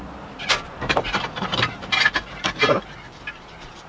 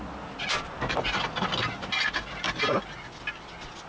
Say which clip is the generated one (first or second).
first